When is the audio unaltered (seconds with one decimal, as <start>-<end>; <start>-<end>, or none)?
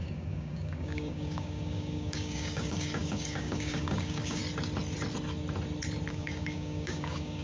4.4-6.1